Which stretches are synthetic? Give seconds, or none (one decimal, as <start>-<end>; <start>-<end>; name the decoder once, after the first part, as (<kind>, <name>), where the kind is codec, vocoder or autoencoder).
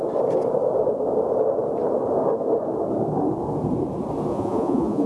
4.3-5.1 (vocoder, Vocos)